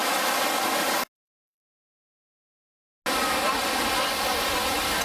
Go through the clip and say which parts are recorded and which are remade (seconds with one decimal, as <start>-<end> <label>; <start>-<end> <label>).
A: 0.0-5.0 recorded